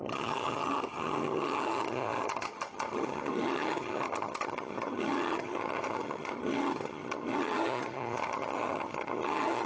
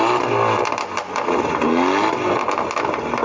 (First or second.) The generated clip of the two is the first